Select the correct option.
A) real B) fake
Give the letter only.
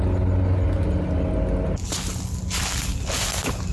A